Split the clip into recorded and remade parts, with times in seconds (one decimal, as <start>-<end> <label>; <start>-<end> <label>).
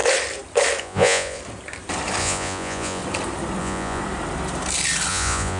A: 0.0-0.8 recorded; 0.8-1.4 remade; 1.4-2.2 recorded; 2.2-3.0 remade; 3.0-3.6 recorded; 3.6-4.0 remade; 4.0-5.1 recorded; 5.1-5.6 remade